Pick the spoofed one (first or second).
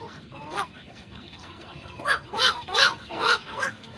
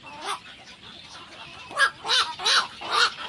first